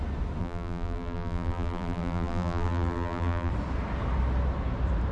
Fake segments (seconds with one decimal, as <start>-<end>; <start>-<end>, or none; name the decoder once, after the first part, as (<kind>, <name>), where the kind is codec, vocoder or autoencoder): 0.4-3.5 (vocoder, BigVGAN v2)